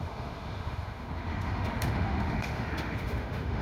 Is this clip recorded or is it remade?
remade